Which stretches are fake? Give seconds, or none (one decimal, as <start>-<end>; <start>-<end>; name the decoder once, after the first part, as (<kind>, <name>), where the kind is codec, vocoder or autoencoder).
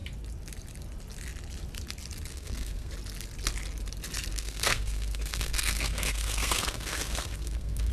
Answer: 2.3-2.9 (codec, SNAC); 4.3-7.9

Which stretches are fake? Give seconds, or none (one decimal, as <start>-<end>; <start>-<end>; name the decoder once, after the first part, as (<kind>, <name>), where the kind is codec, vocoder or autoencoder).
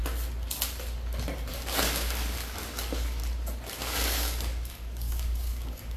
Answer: 1.5-3.2 (codec, DAC); 3.8-6.0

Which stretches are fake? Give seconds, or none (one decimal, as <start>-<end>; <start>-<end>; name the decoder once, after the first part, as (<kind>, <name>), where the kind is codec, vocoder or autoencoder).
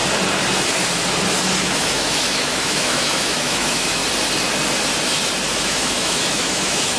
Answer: 1.6-4.0 (autoencoder, DAC-VAE); 5.5-7.0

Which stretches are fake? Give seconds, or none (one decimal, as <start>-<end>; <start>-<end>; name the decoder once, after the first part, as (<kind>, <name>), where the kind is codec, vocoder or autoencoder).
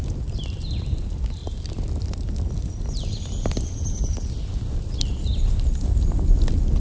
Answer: none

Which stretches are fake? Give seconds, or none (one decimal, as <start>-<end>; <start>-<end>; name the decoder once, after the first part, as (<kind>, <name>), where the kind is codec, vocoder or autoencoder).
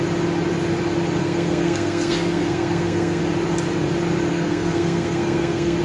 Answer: 1.2-3.2 (codec, SNAC); 4.3-5.8